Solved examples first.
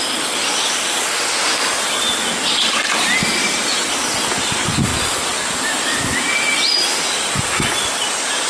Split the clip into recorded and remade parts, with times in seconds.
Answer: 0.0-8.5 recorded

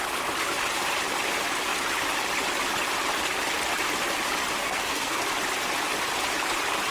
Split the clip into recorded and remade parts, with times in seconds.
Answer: 0.0-4.6 recorded; 4.6-5.2 remade; 5.2-6.9 recorded

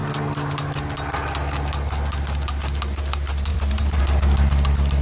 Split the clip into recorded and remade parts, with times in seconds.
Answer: 0.0-3.5 recorded; 3.5-4.0 remade; 4.0-5.0 recorded

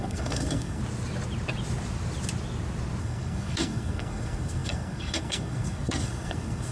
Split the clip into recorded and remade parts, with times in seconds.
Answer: 0.0-0.8 remade; 0.8-3.0 recorded; 3.0-6.7 remade